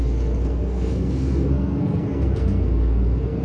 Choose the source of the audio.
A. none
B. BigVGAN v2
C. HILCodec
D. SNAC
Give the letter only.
D